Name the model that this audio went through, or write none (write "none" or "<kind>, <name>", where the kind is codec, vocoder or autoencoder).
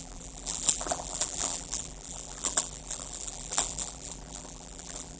vocoder, BigVGAN v2